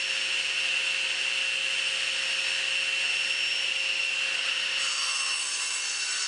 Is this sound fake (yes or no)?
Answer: no